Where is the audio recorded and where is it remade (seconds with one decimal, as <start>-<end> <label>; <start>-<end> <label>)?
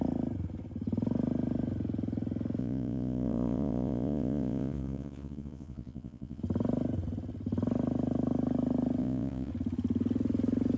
0.0-2.6 recorded; 2.6-6.4 remade; 6.4-9.0 recorded; 9.0-9.5 remade; 9.5-10.8 recorded